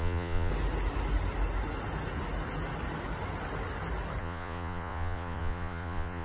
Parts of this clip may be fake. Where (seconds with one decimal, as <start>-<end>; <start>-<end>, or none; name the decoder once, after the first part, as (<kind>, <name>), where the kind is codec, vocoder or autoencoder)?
0.0-0.5 (vocoder, Vocos); 4.2-6.2